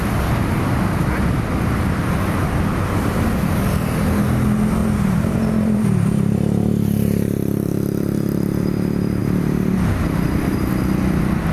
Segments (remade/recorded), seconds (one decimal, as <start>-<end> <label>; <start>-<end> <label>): 0.0-4.8 recorded; 4.8-7.5 remade; 7.5-9.2 recorded; 9.2-10.7 remade; 10.7-11.5 recorded